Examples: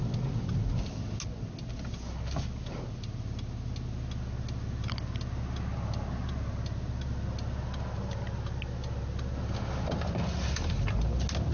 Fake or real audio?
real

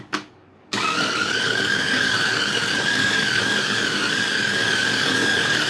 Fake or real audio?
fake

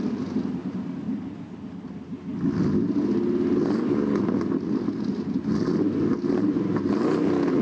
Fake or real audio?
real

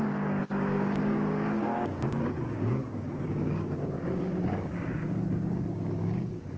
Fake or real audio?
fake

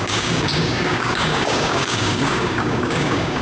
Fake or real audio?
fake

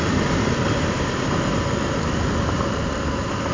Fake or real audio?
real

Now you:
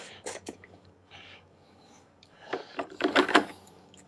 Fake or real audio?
fake